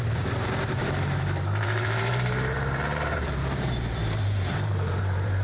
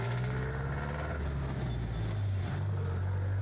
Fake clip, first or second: first